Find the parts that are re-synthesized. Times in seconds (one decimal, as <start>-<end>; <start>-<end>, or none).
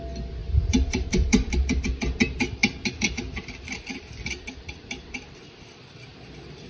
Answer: 0.4-1.8